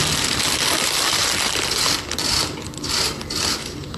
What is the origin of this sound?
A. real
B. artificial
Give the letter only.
A